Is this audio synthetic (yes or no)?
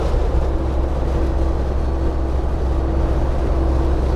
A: no